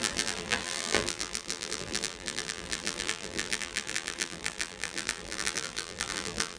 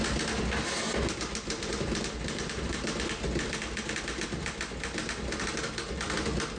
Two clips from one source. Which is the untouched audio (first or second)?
second